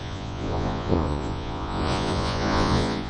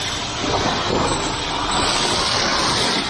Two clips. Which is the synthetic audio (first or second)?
first